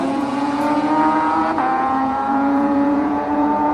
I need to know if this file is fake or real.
fake